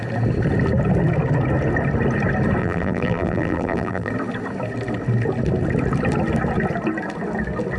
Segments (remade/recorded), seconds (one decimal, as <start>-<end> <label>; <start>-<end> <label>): 0.0-2.6 recorded; 2.6-4.1 remade; 4.1-7.8 recorded